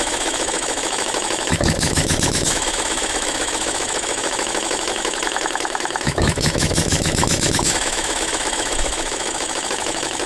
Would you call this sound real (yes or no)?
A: no